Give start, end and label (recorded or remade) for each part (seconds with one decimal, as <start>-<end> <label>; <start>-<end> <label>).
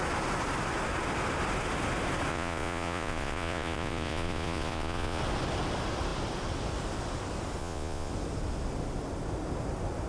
0.0-2.3 recorded; 2.3-5.2 remade; 5.2-7.6 recorded; 7.6-8.1 remade; 8.1-10.1 recorded